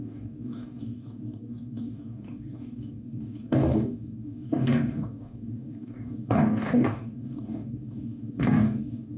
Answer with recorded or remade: remade